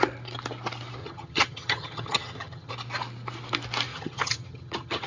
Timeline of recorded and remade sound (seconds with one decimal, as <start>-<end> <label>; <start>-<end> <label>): 0.0-1.0 recorded; 1.0-2.7 remade; 2.7-3.9 recorded; 3.9-5.1 remade